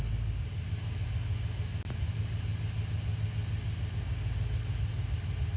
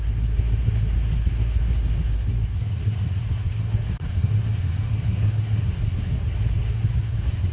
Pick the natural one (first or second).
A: first